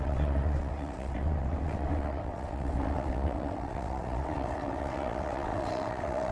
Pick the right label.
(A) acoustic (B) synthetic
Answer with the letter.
B